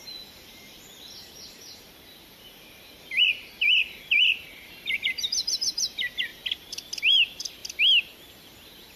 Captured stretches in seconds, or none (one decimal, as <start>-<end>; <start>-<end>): 6.3-7.0; 7.6-8.4